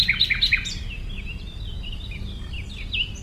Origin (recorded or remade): recorded